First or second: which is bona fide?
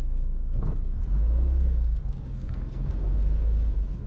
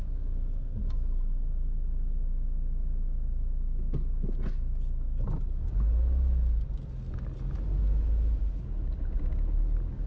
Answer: second